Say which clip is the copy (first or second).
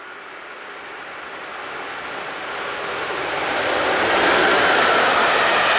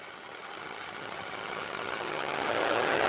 second